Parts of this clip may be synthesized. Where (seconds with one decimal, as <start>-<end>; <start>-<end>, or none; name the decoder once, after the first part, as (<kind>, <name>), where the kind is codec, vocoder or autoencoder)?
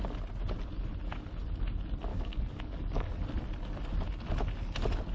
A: 2.1-3.1 (codec, DAC)